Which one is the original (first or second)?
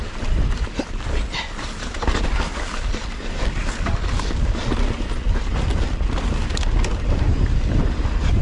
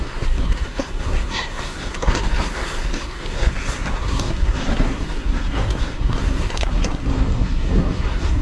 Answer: first